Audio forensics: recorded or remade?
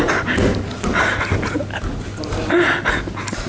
recorded